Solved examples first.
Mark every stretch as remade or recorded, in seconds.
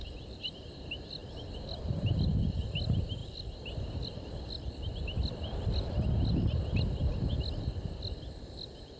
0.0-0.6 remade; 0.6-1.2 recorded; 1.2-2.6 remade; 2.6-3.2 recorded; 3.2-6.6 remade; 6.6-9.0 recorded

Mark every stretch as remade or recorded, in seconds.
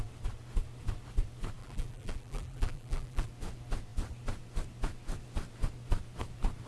0.0-1.6 recorded; 1.6-3.3 remade; 3.3-6.7 recorded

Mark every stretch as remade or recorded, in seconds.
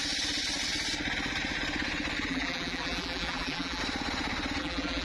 0.0-2.3 recorded; 2.3-3.8 remade; 3.8-4.6 recorded; 4.6-5.0 remade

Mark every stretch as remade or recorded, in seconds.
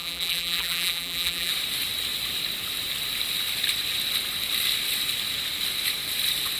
0.0-1.5 remade; 1.5-6.6 recorded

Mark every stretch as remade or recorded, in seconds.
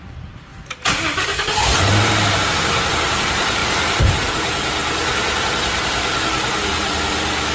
0.0-0.5 remade; 0.5-2.9 recorded; 2.9-4.8 remade; 4.8-6.7 recorded; 6.7-7.5 remade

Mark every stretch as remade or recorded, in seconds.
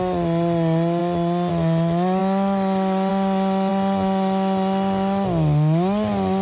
0.0-6.4 recorded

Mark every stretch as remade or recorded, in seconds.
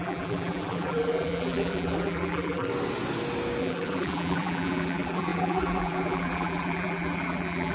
0.0-2.7 remade; 2.7-3.6 recorded; 3.6-7.7 remade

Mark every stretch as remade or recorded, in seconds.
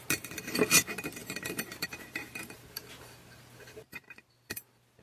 0.0-1.2 recorded; 1.2-4.2 remade; 4.2-5.0 recorded